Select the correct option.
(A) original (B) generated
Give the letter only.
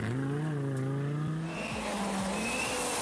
A